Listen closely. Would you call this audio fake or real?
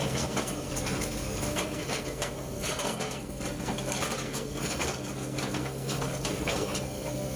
fake